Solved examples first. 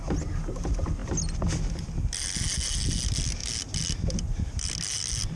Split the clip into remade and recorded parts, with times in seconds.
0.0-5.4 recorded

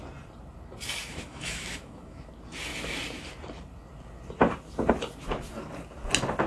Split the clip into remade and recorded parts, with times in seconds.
0.0-1.1 recorded; 1.1-2.3 remade; 2.3-6.5 recorded

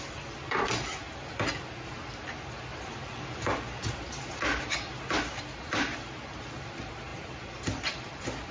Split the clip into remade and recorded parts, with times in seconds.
0.0-8.5 recorded

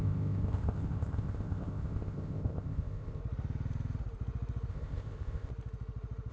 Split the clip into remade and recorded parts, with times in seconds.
0.0-3.2 remade; 3.2-4.7 recorded; 4.7-5.5 remade; 5.5-6.3 recorded

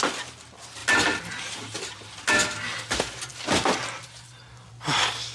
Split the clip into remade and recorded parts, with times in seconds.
0.0-5.3 recorded

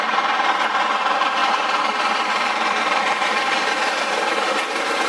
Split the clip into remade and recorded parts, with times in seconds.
0.0-5.1 remade